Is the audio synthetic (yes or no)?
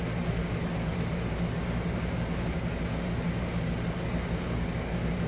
no